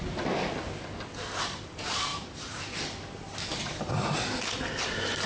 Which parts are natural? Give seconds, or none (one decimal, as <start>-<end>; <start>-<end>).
0.0-2.1; 2.6-3.5; 4.1-5.3